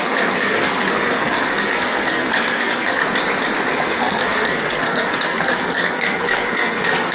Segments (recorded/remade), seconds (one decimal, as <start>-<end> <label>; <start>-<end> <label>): 0.0-3.0 remade; 3.0-3.7 recorded; 3.7-7.1 remade